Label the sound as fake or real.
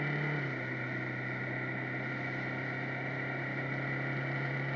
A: real